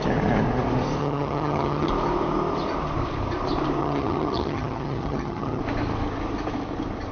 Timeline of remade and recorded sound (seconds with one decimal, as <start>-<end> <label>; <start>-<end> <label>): 0.0-1.0 recorded; 1.0-1.9 remade; 1.9-3.8 recorded; 3.8-5.6 remade; 5.6-7.1 recorded